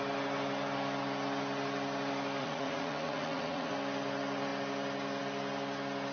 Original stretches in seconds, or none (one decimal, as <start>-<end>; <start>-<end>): 0.0-2.4; 3.7-6.1